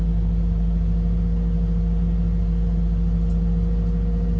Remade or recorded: recorded